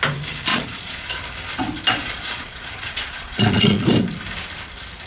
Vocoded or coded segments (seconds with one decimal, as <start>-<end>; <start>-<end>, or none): 0.5-1.1; 2.0-3.9